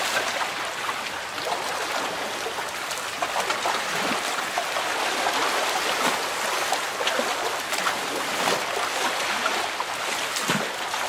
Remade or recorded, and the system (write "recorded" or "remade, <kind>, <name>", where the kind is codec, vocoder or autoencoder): recorded